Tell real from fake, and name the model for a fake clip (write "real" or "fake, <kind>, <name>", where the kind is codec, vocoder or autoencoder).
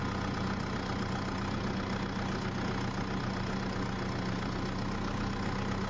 real